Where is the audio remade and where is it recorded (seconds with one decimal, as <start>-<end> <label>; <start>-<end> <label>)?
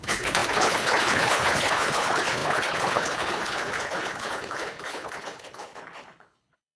0.0-6.8 remade